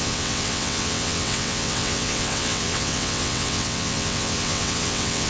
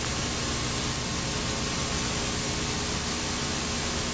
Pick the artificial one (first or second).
first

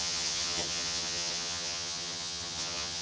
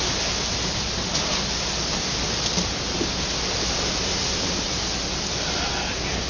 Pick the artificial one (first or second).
first